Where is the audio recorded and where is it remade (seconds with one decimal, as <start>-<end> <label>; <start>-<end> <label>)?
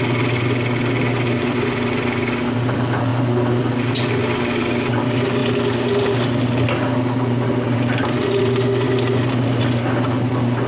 0.0-10.7 recorded